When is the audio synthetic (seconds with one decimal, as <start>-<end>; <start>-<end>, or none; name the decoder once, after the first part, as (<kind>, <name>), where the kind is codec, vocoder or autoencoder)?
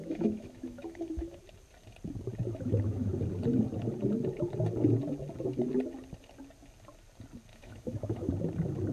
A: 0.0-1.4 (autoencoder, DAC-VAE); 2.4-3.1; 7.5-8.3